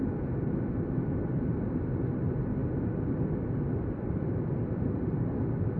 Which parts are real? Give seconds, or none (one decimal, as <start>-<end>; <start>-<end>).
0.0-2.6; 5.1-5.8